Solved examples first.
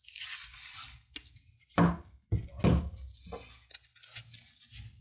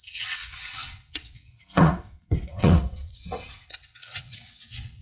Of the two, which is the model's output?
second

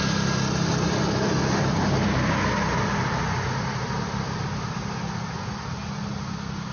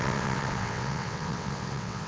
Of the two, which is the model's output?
second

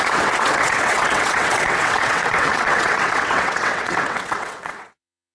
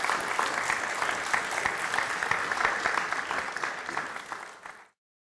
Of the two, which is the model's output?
first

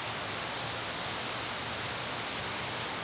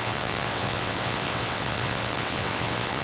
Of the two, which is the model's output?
second